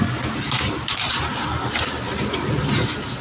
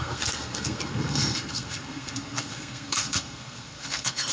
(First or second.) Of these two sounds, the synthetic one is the second